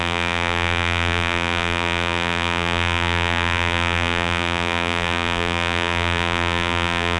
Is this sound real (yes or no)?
no